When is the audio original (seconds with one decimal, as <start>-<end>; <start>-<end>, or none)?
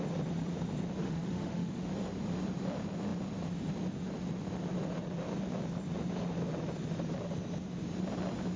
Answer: 0.0-1.0; 1.9-8.6